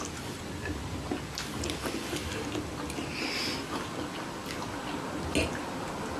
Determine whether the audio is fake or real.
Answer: real